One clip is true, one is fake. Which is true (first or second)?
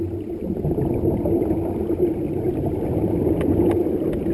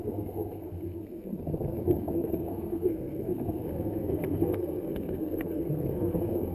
first